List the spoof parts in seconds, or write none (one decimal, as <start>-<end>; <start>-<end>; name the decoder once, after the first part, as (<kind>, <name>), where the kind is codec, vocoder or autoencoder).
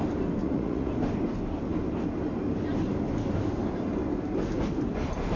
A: 0.4-0.9 (vocoder, Vocos)